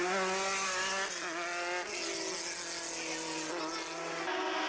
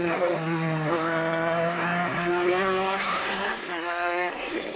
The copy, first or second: second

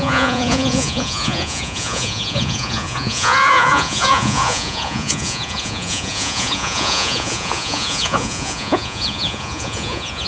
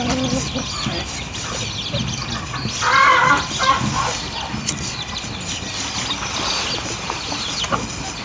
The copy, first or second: first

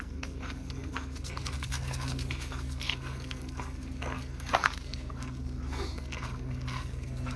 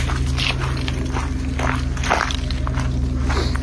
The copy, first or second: first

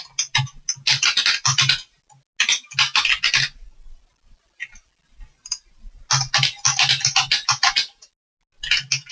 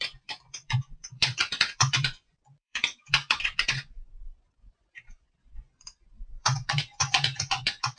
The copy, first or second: second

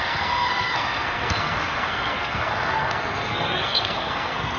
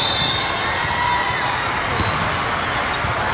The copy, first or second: first